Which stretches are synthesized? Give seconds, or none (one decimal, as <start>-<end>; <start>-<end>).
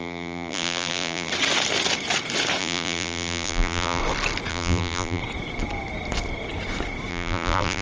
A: 0.0-1.3; 2.6-4.0; 4.5-5.2; 7.1-7.8